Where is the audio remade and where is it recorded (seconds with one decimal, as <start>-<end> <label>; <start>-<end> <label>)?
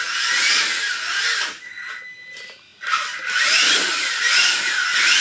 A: 0.0-5.2 recorded